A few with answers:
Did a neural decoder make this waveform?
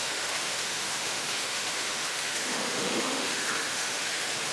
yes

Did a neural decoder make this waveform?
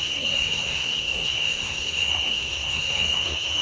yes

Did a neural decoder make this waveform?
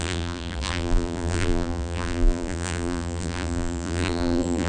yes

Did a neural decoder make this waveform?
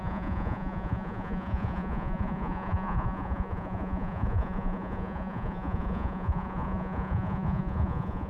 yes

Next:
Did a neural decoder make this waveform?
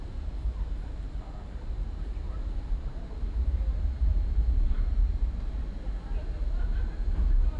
yes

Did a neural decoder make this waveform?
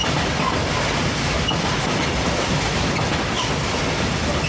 no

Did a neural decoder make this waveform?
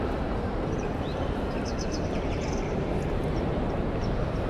yes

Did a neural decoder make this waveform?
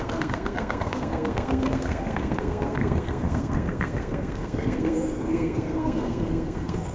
yes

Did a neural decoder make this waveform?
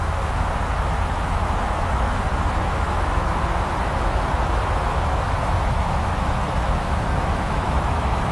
yes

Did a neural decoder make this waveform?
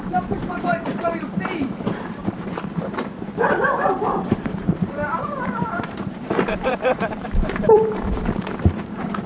yes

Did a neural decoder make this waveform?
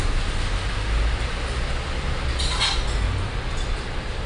no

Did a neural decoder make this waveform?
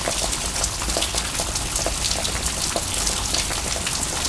no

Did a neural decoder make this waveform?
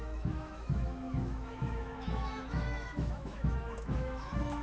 yes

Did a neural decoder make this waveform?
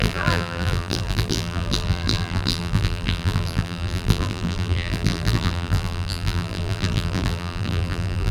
yes